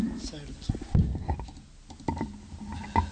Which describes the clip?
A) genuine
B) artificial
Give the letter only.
A